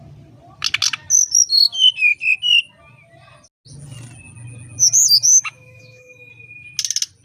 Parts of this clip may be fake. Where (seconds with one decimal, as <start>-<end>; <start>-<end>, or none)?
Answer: 5.3-6.3